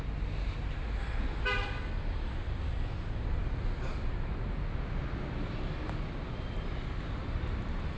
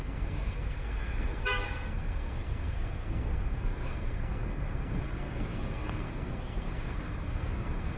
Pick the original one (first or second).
first